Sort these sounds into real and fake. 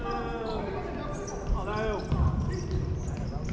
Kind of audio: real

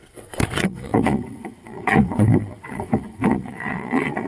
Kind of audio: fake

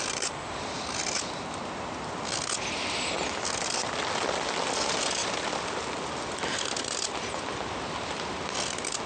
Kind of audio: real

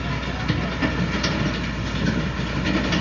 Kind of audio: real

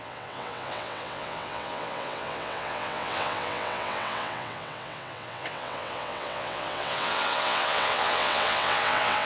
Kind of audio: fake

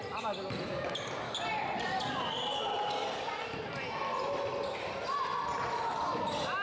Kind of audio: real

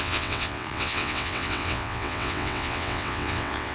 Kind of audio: fake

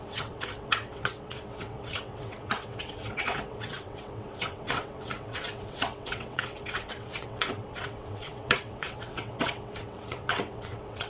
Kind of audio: fake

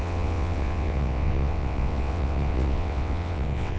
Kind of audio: fake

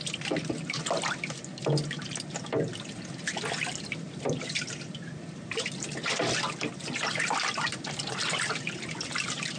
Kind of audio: real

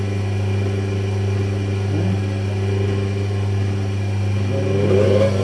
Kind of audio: real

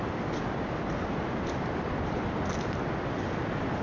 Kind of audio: real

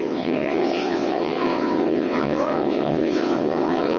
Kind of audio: fake